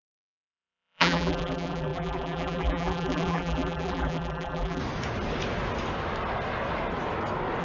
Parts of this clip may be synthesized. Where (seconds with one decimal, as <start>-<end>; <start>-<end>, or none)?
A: 0.0-4.8